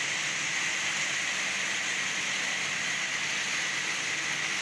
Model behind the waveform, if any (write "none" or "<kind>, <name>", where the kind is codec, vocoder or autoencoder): none